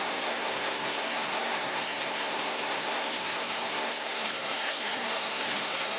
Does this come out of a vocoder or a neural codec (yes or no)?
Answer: yes